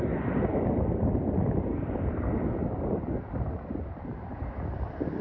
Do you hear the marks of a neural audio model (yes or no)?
yes